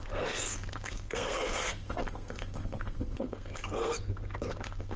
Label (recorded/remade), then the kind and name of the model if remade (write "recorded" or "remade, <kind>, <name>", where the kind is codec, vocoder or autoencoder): remade, codec, SNAC